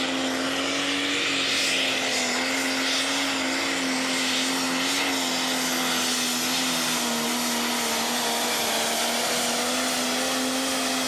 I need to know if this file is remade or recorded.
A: recorded